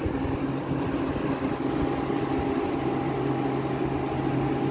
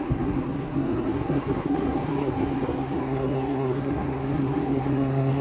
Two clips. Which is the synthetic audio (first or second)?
second